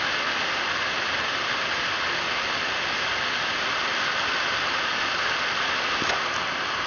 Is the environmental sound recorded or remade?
recorded